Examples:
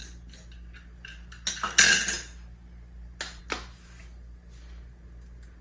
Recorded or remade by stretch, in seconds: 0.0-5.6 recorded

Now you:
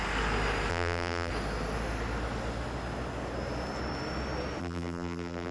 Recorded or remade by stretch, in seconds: 0.0-0.7 recorded; 0.7-1.3 remade; 1.3-4.6 recorded; 4.6-5.5 remade

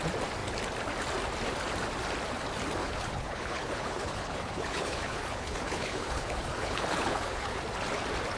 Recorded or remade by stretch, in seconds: 0.0-2.8 recorded; 2.8-7.6 remade; 7.6-8.4 recorded

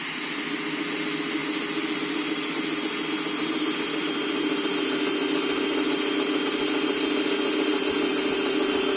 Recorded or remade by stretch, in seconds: 0.0-9.0 recorded

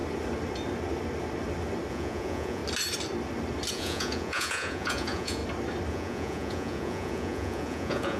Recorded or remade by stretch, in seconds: 0.0-1.9 recorded; 1.9-2.6 remade; 2.6-3.7 recorded; 3.7-5.4 remade; 5.4-5.9 recorded; 5.9-8.2 remade

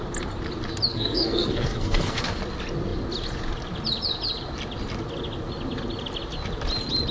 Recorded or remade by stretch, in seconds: 0.0-0.9 recorded; 0.9-2.4 remade; 2.4-7.1 recorded

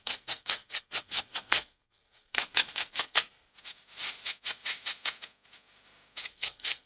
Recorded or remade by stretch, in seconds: 0.0-3.5 remade; 3.5-6.3 recorded; 6.3-6.9 remade

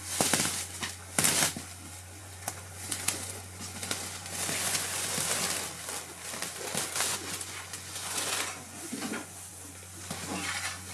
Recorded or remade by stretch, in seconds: 0.0-2.2 recorded; 2.2-5.1 remade; 5.1-7.1 recorded; 7.1-9.5 remade; 9.5-10.9 recorded